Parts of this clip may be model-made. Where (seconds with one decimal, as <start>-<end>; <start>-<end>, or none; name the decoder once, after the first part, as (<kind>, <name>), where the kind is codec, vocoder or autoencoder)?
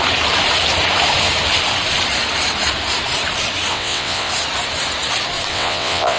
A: 3.7-4.3 (vocoder, WaveNeXt); 5.5-6.2